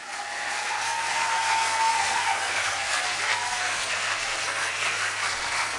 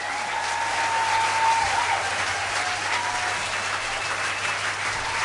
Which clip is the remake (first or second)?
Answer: first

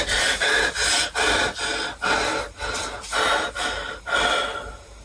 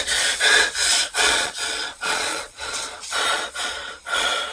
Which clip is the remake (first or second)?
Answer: second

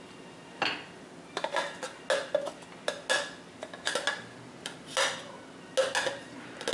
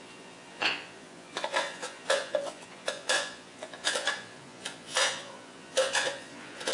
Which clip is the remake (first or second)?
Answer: second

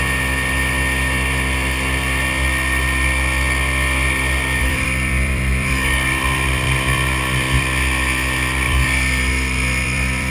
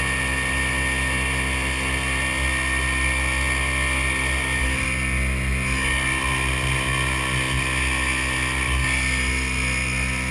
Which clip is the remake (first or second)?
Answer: first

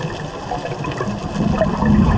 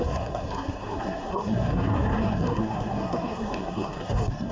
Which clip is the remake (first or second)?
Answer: second